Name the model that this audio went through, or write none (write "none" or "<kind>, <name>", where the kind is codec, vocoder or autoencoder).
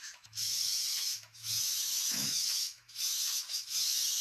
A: autoencoder, DAC-VAE